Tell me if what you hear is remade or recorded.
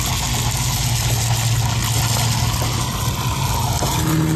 recorded